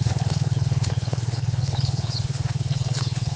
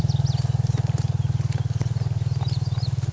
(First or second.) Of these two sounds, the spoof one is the first